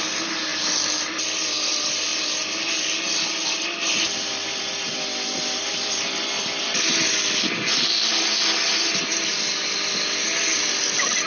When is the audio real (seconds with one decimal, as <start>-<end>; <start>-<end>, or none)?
0.5-1.0; 2.1-3.3